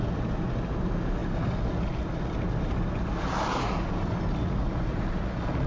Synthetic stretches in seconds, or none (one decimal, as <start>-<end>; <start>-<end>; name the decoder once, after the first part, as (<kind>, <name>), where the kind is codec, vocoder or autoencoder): none